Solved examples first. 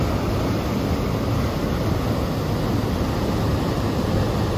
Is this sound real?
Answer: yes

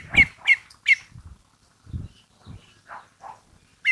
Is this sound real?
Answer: no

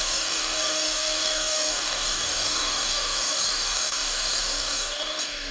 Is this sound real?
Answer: no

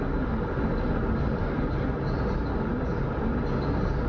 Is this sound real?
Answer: yes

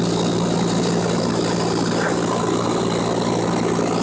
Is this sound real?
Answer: yes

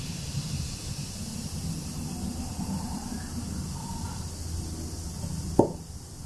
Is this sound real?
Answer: yes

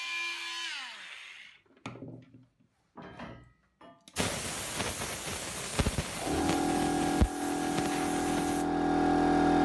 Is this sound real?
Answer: yes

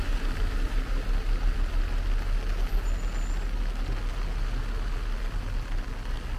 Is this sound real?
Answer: yes